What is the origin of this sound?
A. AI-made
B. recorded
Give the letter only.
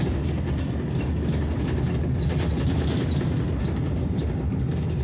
B